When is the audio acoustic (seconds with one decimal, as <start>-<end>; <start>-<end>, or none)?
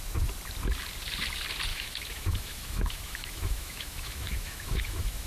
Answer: 0.0-1.7